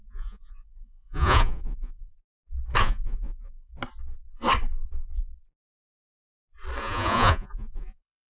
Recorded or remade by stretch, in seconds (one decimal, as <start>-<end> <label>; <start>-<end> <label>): 0.0-2.1 remade; 2.1-2.8 recorded; 2.8-3.7 remade; 3.7-6.8 recorded; 6.8-8.3 remade